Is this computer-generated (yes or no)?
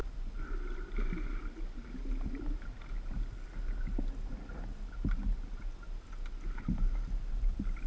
no